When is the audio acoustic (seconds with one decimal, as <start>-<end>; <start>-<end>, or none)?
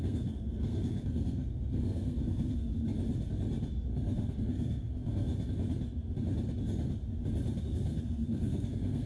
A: 2.7-3.9; 5.3-7.6